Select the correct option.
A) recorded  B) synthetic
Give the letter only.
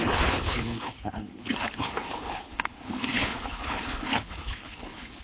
B